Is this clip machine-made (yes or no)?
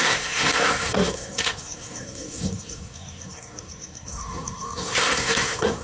yes